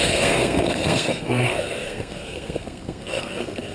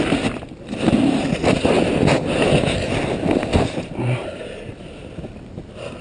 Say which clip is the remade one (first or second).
first